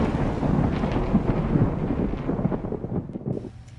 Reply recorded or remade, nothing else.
recorded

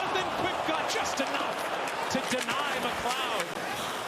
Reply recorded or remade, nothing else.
recorded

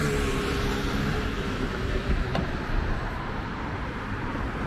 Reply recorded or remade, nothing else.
remade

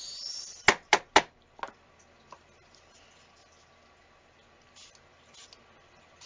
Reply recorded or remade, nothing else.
recorded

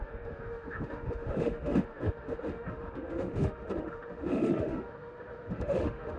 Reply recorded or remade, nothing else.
remade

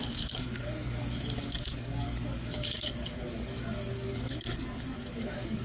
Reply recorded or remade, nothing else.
remade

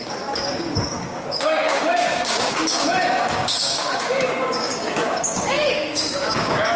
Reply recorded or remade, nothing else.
remade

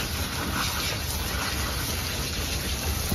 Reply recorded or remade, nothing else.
recorded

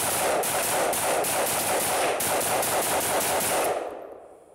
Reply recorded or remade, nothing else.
remade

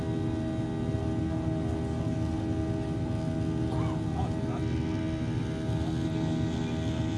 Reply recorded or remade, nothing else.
recorded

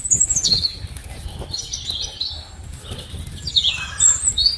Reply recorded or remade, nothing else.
recorded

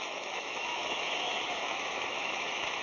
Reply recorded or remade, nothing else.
remade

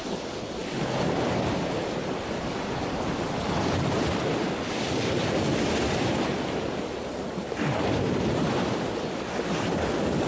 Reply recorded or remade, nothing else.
recorded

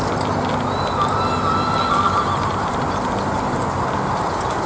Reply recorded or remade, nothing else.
recorded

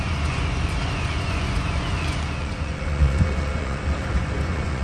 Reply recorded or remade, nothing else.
remade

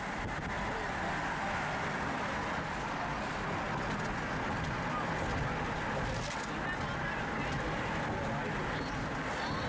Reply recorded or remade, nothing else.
recorded